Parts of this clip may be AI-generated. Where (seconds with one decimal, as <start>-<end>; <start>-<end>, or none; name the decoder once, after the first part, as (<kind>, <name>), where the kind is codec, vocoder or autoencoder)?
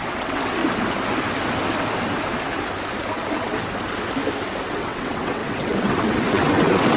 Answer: 0.0-0.6 (vocoder, WaveNeXt); 4.7-7.0